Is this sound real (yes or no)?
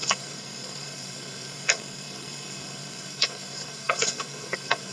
no